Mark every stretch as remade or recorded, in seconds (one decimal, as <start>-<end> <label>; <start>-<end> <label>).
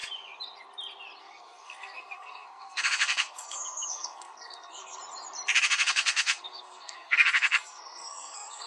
0.0-1.2 recorded; 1.2-5.0 remade; 5.0-5.6 recorded; 5.6-8.7 remade